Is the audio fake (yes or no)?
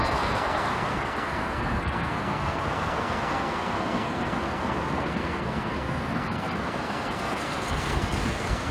yes